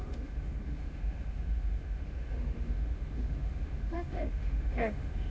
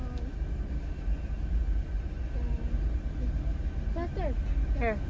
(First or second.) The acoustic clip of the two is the second